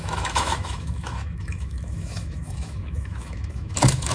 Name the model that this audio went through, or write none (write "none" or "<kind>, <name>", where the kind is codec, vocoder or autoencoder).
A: autoencoder, DAC-VAE